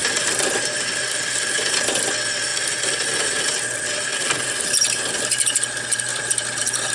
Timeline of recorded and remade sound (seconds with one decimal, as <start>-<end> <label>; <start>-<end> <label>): 0.0-6.9 recorded